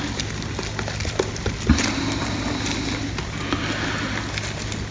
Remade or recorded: recorded